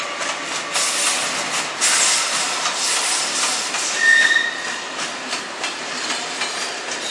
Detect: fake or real real